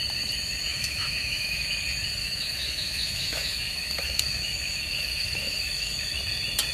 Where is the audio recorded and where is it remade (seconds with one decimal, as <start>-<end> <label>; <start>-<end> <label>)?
0.0-0.7 recorded; 0.7-1.8 remade; 1.8-2.2 recorded; 2.2-6.2 remade; 6.2-6.7 recorded